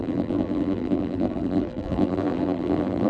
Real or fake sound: fake